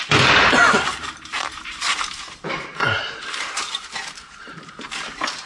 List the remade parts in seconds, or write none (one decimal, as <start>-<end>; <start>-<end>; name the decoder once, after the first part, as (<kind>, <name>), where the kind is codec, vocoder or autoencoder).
0.0-5.5 (vocoder, BigVGAN v2)